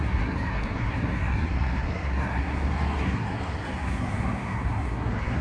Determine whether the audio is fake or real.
fake